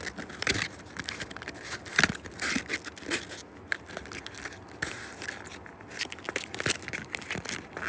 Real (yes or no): yes